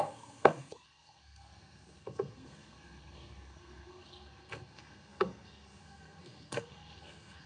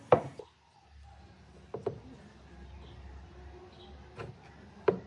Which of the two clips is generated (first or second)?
first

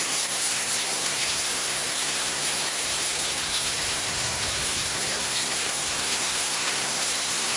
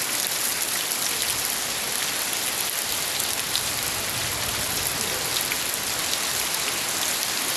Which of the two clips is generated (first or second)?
first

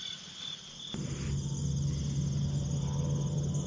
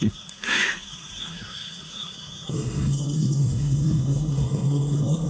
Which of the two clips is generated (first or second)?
second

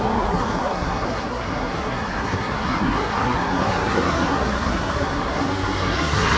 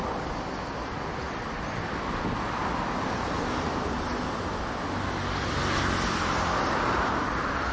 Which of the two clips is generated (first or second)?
first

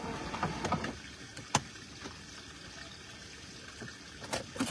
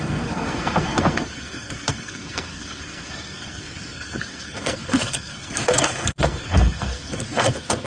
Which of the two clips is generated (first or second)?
second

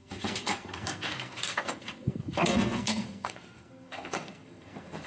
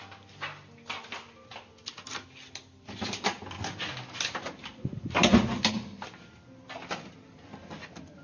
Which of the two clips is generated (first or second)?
first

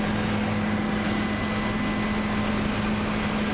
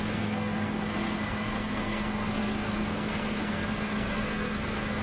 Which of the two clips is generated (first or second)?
second